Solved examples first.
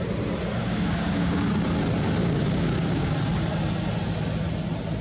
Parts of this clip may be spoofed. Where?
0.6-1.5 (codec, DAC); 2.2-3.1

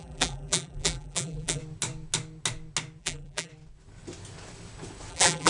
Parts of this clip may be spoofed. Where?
0.0-1.6 (vocoder, BigVGAN v2); 3.0-3.5; 5.1-5.5

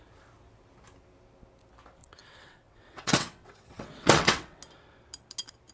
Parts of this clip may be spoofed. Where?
2.0-4.6 (vocoder, WaveNeXt)

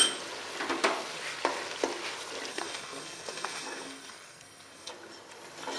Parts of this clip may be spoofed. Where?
2.5-4.9 (codec, SNAC)

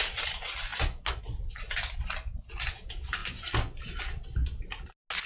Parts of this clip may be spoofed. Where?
none